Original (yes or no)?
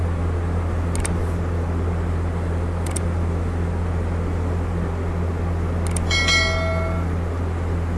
yes